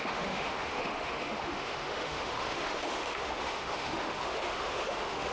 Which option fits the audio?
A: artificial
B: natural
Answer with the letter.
A